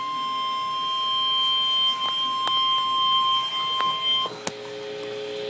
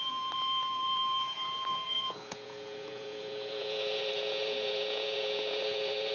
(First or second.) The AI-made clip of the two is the second